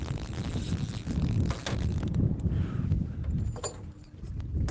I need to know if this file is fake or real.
real